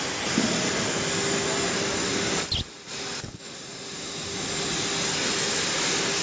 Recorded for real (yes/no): yes